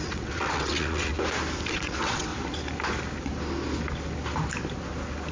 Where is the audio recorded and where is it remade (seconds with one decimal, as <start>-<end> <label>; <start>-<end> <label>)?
0.0-1.1 remade; 1.1-1.7 recorded; 1.7-2.3 remade; 2.3-5.3 recorded